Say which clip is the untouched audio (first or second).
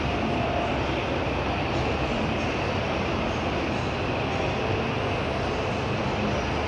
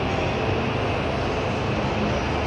second